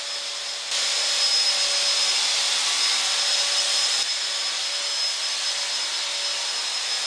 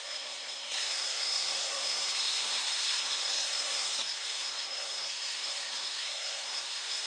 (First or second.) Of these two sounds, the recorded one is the first